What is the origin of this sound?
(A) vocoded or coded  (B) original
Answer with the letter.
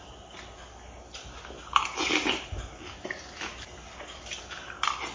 B